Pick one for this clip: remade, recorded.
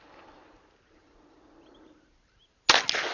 recorded